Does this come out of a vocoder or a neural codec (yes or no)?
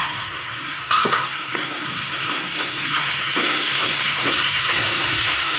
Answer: yes